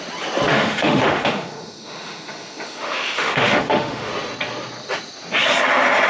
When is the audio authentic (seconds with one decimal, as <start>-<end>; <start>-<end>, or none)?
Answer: 0.0-0.5; 4.1-6.1